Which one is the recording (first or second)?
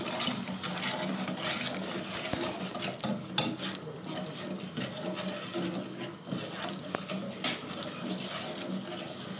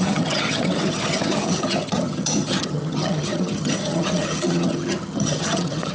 first